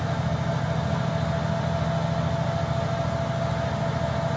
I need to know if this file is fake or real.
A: real